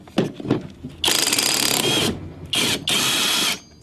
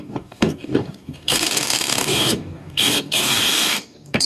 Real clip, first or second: first